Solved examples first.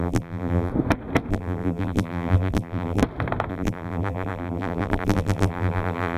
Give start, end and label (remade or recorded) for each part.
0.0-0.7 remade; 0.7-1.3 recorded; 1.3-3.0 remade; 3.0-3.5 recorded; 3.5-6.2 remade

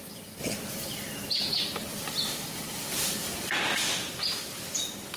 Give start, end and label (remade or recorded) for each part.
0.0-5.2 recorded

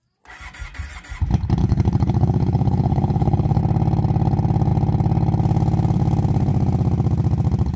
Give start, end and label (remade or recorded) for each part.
0.0-1.6 recorded; 1.6-3.6 remade; 3.6-7.8 recorded

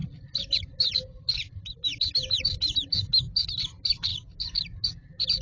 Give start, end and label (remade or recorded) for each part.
0.0-5.4 recorded

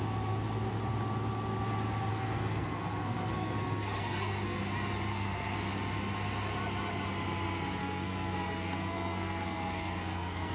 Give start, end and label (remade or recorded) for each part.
0.0-2.1 recorded; 2.1-4.6 remade; 4.6-5.1 recorded; 5.1-5.7 remade; 5.7-7.8 recorded; 7.8-10.5 remade

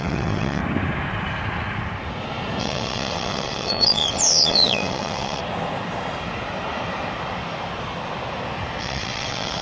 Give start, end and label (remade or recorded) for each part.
0.0-0.6 remade; 0.6-2.6 recorded; 2.6-5.4 remade; 5.4-8.8 recorded; 8.8-9.6 remade

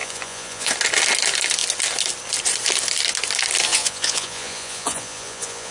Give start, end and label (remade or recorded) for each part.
0.0-0.7 remade; 0.7-3.7 recorded; 3.7-5.7 remade

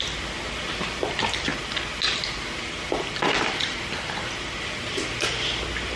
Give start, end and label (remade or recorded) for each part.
0.0-6.0 recorded